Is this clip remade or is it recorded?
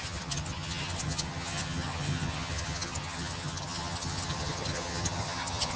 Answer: remade